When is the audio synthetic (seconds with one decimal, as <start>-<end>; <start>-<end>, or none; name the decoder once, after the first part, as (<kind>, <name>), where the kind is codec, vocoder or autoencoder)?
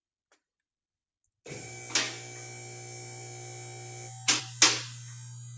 none